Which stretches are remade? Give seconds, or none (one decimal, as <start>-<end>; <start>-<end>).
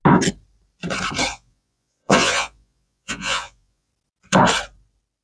1.3-3.9